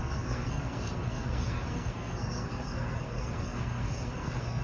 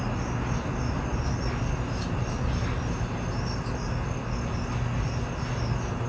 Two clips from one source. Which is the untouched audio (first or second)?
second